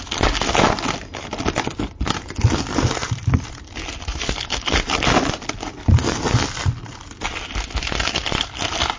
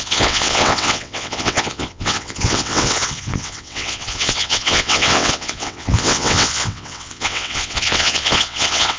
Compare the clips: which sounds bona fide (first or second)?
first